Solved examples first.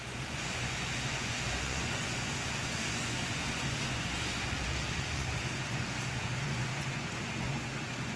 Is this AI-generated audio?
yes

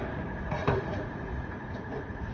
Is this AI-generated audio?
yes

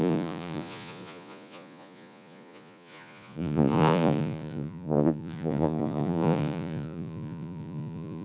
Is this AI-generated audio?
yes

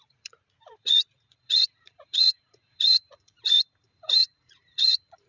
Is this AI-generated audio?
yes